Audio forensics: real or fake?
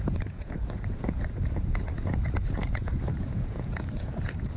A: fake